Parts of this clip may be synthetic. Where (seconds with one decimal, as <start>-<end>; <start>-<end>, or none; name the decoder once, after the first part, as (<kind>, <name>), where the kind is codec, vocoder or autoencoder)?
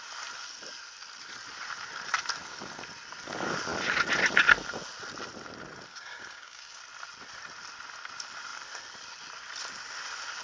5.9-6.8 (codec, DAC)